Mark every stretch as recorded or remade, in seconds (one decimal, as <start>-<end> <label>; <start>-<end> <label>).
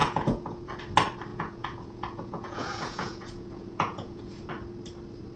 0.0-0.8 remade; 0.8-1.3 recorded; 1.3-4.5 remade; 4.5-5.4 recorded